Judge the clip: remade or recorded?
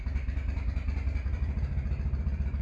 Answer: recorded